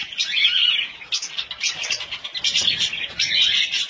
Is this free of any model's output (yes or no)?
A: yes